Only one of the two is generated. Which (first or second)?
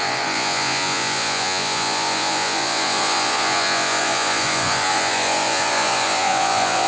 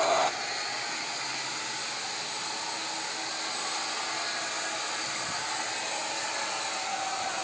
first